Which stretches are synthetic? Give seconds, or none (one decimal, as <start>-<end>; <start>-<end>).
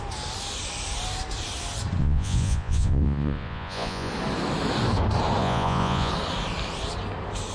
2.0-4.1; 5.4-6.1